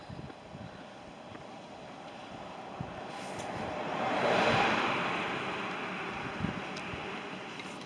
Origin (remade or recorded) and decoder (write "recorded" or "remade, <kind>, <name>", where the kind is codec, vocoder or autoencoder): recorded